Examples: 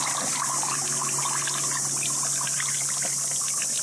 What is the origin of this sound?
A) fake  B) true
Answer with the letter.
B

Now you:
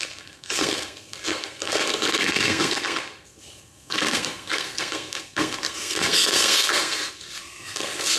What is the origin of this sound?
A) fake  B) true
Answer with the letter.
A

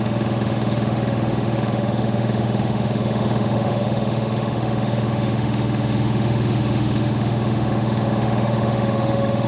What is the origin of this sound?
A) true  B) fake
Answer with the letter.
B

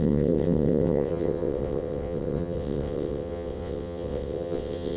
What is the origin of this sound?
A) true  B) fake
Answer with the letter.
B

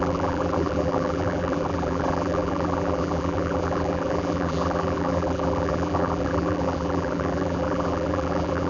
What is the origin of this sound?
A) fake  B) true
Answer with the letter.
A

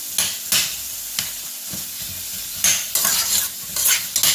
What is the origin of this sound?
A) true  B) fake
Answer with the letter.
A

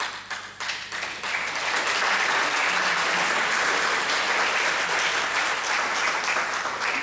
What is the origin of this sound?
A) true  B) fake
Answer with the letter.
A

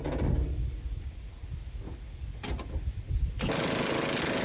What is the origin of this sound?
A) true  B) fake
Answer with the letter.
A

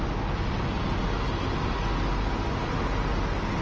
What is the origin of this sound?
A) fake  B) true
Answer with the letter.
B